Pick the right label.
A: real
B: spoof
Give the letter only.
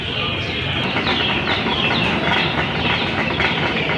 A